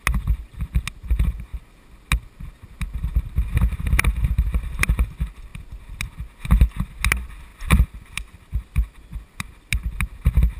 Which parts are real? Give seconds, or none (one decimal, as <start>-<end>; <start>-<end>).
0.0-7.5; 9.5-10.6